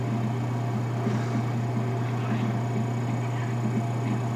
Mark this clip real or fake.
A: real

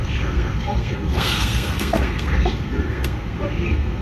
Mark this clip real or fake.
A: fake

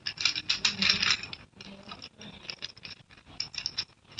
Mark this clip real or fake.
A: real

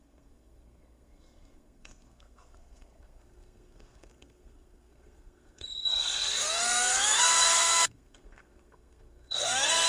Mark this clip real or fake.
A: fake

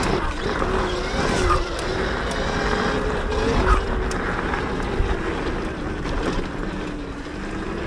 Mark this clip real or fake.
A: real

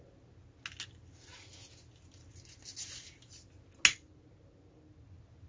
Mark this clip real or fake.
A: real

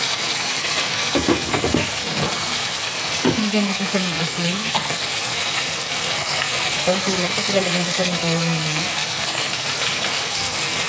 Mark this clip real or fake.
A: fake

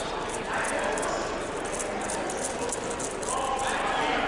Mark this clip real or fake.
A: real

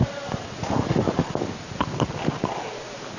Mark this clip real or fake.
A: real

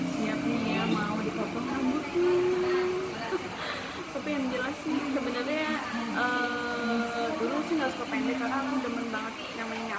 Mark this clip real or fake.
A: real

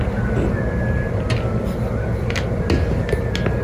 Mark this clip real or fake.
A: real